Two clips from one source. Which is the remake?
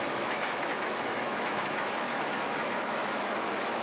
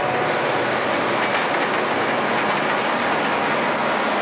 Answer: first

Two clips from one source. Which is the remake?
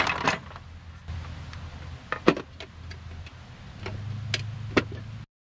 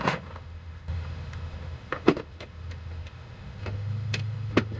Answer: second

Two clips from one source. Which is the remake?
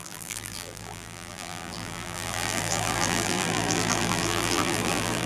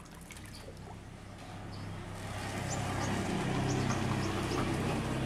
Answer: first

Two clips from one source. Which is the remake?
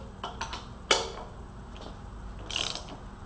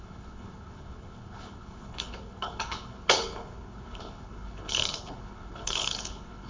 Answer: second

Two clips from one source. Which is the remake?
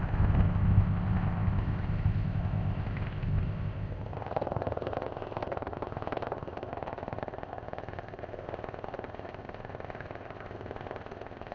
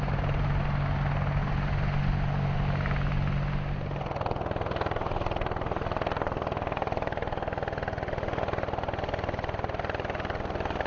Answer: first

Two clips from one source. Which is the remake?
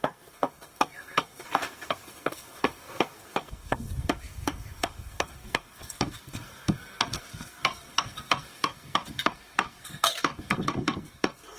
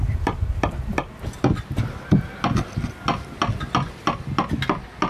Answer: first